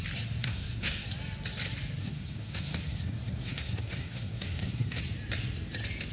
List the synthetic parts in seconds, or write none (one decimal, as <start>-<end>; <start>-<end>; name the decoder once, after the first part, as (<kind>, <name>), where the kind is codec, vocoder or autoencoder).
0.4-1.1 (codec, SNAC); 2.0-5.0